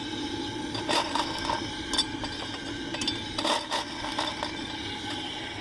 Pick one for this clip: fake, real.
real